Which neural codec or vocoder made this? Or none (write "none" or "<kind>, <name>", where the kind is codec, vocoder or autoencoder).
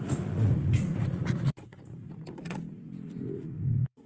vocoder, Vocos